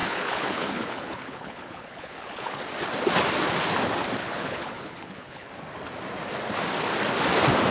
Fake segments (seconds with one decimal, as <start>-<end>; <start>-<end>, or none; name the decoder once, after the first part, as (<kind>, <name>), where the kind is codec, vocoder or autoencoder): 0.0-2.6 (codec, HILCodec); 4.2-5.5